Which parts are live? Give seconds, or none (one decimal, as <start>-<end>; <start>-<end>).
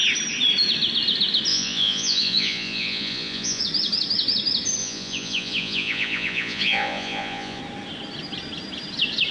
0.0-1.5; 3.6-4.8; 7.6-9.3